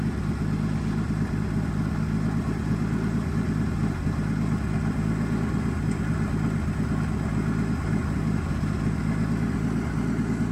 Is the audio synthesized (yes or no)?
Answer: no